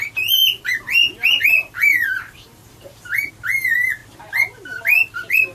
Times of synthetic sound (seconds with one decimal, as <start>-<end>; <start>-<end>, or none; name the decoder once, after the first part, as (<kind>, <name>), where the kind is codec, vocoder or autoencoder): 0.4-3.3 (vocoder, BigVGAN v2)